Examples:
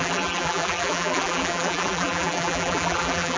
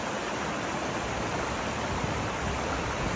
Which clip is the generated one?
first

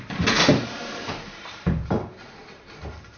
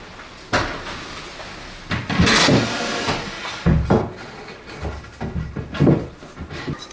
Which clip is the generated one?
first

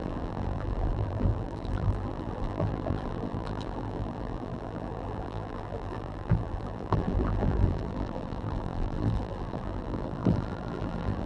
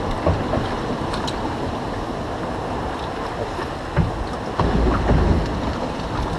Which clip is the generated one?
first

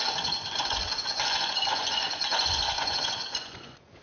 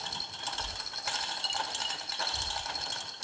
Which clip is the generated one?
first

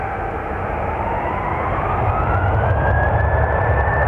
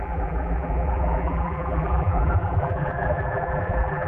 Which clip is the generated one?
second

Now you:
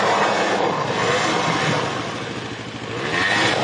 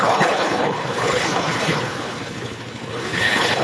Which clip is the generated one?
second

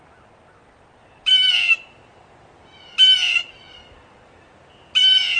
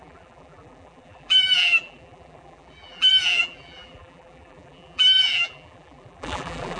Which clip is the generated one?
second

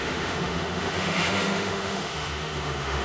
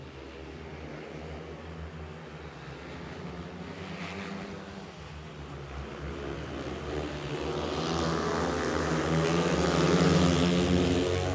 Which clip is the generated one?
first